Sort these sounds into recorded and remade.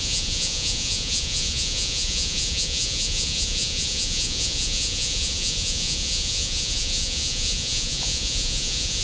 remade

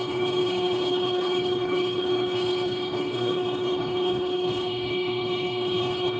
remade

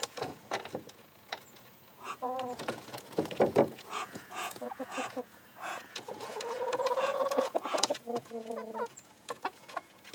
remade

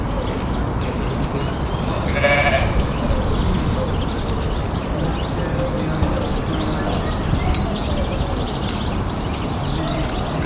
recorded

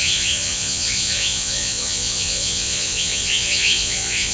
remade